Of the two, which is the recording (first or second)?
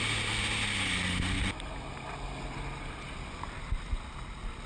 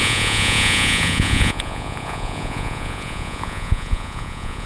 first